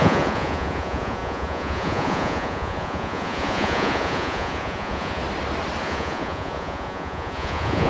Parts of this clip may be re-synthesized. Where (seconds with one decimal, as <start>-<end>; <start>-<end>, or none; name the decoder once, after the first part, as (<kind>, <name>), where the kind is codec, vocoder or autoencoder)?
0.0-5.2 (vocoder, Vocos); 5.8-7.9